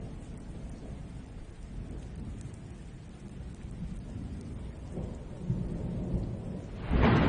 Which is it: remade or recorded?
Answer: recorded